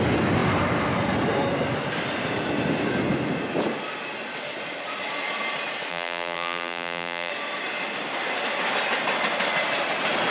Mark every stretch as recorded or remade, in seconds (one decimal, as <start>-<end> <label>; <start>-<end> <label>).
0.0-5.9 recorded; 5.9-7.3 remade; 7.3-10.3 recorded